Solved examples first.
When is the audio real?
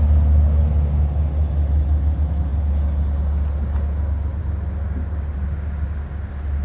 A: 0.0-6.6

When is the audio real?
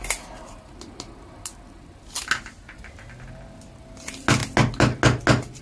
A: 0.0-5.6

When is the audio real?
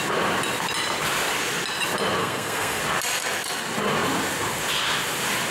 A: 0.0-2.2; 2.8-5.5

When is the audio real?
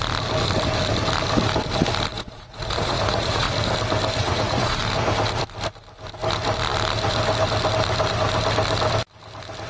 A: 0.0-2.1; 3.5-4.2; 4.8-9.7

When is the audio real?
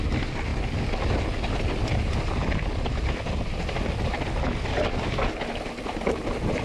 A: 0.0-6.6